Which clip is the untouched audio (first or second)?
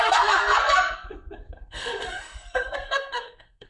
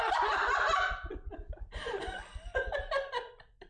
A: second